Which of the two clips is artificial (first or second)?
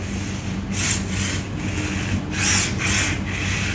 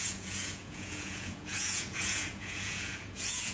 second